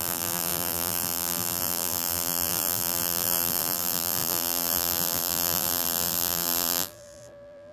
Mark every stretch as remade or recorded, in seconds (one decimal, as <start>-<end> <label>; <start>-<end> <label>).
0.0-7.7 remade